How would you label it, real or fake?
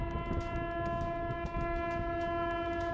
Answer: real